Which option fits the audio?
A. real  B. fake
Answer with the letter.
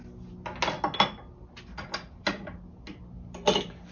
A